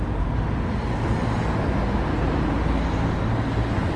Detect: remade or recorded recorded